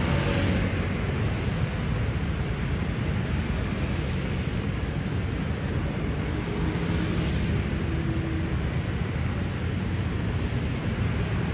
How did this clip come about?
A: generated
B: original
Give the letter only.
B